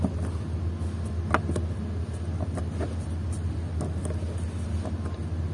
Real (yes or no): yes